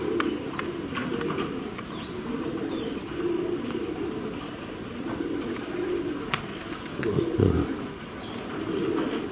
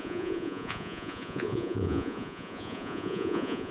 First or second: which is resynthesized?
second